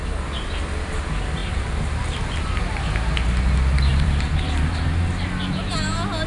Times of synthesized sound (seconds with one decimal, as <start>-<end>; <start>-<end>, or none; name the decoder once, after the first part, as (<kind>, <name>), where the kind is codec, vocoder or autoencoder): 1.4-2.0 (vocoder, BigVGAN v2); 3.9-5.1